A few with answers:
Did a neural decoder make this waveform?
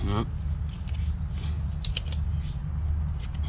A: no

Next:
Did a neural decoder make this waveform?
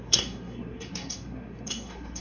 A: yes